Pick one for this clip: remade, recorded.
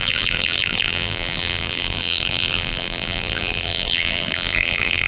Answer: remade